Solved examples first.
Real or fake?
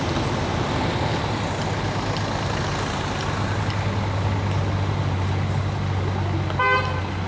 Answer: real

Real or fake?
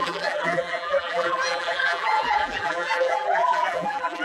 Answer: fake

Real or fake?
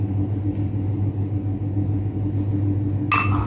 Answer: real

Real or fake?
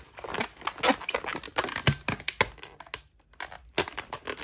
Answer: real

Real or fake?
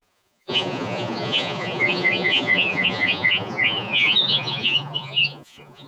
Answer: fake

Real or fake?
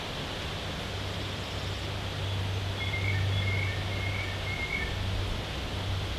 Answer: real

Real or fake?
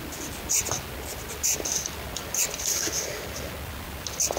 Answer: real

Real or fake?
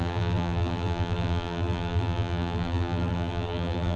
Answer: fake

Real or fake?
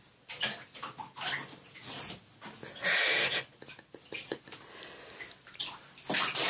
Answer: real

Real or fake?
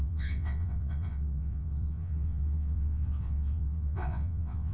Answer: fake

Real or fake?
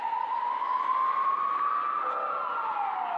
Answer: real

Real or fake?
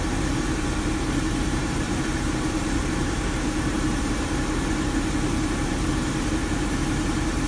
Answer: fake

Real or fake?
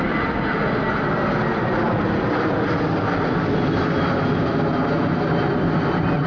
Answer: real